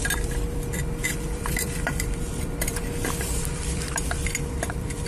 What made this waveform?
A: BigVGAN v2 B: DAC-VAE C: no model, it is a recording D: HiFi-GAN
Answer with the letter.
A